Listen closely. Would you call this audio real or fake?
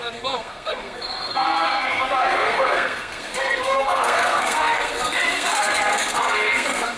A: fake